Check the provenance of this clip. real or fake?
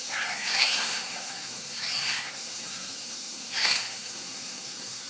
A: fake